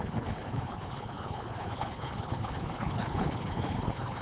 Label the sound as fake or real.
fake